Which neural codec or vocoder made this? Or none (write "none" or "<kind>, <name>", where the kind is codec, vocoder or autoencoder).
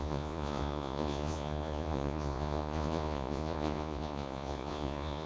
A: vocoder, Vocos